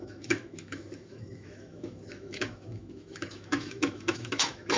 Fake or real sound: fake